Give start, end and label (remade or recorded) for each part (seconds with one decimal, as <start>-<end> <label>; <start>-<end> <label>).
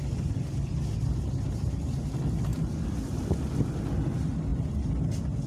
0.0-5.5 recorded